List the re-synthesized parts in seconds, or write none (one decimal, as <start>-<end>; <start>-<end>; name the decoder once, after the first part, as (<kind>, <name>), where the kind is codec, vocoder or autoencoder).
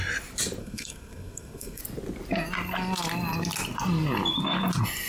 0.6-1.8 (codec, SNAC)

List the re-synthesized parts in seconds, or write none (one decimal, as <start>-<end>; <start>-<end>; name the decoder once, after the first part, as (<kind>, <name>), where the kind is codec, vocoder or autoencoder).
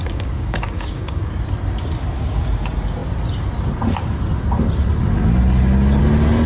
0.0-1.2 (codec, DAC)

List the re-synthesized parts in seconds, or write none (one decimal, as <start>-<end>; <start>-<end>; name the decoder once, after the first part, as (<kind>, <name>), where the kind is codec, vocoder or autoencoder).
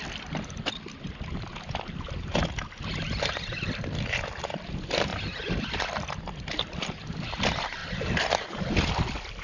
none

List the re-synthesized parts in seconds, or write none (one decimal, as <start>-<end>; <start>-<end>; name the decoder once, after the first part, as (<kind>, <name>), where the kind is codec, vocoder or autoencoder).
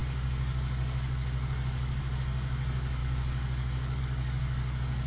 0.0-5.1 (codec, DAC)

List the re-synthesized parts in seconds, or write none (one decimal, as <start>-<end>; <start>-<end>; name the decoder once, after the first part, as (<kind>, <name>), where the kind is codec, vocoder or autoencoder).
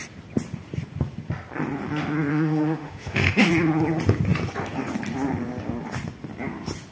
2.3-3.5 (autoencoder, DAC-VAE)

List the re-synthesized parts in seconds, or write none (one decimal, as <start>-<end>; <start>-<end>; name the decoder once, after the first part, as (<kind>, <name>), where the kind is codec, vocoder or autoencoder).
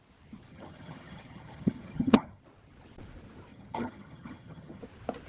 0.5-2.4 (vocoder, HiFi-GAN); 3.5-4.8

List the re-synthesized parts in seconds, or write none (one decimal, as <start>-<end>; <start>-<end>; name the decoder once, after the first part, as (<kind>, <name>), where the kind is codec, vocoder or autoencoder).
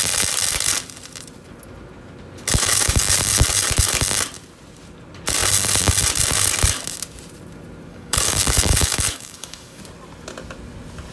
2.7-3.2 (codec, DAC); 7.9-9.8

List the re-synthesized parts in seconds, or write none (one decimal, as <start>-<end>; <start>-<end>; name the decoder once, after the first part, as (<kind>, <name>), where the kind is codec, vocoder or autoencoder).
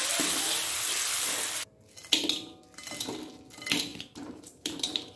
3.9-5.2 (vocoder, BigVGAN v2)